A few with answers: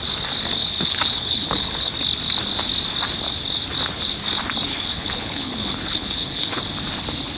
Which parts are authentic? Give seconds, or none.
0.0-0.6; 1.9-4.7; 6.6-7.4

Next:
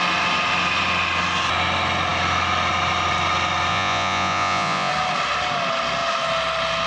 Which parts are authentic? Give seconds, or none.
0.0-3.7; 4.9-6.9

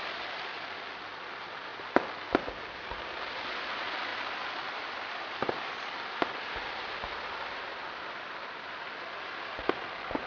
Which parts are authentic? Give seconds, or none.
1.7-2.3

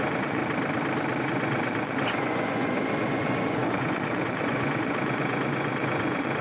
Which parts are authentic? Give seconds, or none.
0.4-1.2

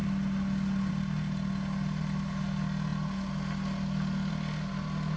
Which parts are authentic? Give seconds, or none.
0.0-5.2

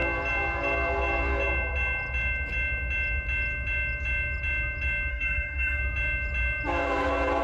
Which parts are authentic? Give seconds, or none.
0.0-5.1; 5.8-7.4